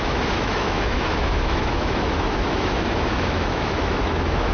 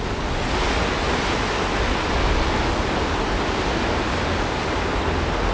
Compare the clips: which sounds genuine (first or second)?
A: second